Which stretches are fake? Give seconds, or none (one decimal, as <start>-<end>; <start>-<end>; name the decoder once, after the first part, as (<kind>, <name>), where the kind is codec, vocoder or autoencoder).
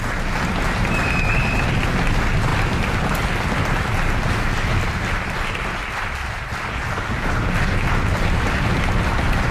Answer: none